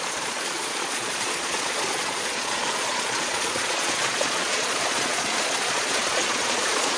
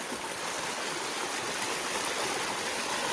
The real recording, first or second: second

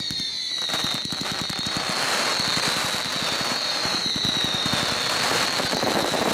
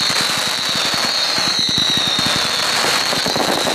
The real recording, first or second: second